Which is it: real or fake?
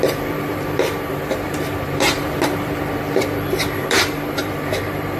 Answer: fake